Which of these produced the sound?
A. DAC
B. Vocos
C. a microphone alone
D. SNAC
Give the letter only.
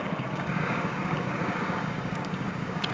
A